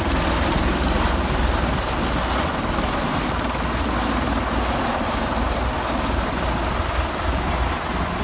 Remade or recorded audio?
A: recorded